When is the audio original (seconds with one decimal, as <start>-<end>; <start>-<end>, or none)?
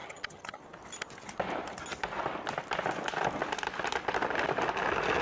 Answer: 0.6-5.2